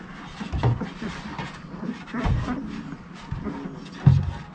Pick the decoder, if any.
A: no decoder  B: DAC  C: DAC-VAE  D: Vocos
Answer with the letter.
A